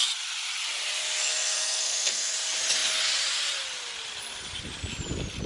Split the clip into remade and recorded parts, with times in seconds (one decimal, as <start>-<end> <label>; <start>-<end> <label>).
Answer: 0.0-1.2 recorded; 1.2-2.3 remade; 2.3-5.5 recorded